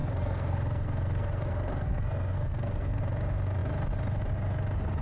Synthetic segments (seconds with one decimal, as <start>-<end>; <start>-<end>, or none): 0.0-3.0